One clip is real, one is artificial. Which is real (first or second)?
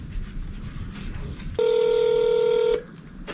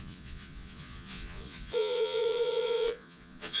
first